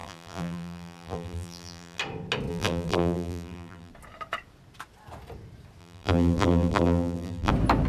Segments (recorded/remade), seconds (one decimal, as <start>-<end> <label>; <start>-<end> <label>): 0.0-2.0 remade; 2.0-2.5 recorded; 2.5-3.9 remade; 3.9-5.8 recorded; 5.8-7.5 remade; 7.5-7.9 recorded